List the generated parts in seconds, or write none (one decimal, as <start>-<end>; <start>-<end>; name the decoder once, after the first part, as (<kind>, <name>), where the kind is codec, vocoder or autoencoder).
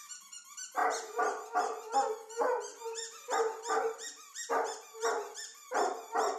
none